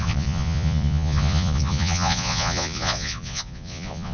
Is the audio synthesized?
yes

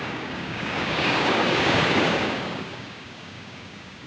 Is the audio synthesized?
yes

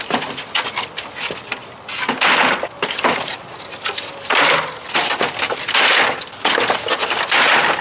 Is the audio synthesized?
no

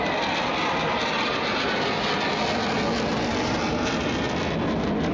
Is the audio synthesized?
no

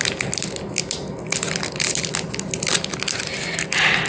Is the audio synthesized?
no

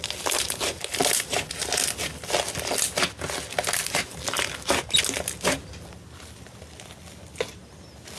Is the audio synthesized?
no